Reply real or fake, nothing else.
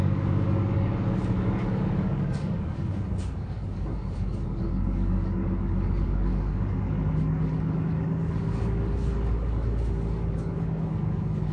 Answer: fake